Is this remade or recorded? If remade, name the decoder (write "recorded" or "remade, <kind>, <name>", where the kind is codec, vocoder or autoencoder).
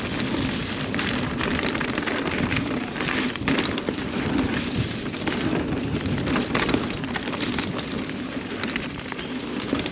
remade, vocoder, BigVGAN v2